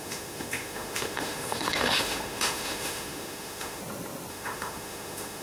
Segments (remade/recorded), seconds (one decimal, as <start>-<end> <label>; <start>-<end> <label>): 0.0-3.8 remade; 3.8-4.3 recorded; 4.3-5.4 remade